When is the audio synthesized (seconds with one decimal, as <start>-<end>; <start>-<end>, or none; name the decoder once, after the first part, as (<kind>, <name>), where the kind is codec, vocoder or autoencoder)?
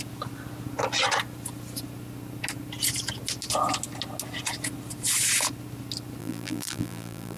6.2-7.4 (vocoder, BigVGAN v2)